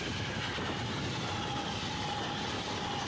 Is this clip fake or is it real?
real